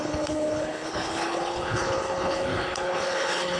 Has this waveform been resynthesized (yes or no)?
yes